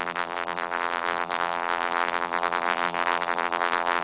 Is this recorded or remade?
remade